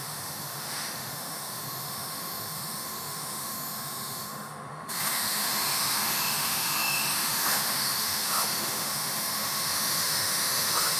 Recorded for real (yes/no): no